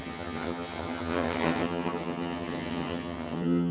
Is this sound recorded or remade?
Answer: remade